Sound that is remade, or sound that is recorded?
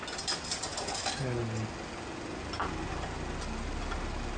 recorded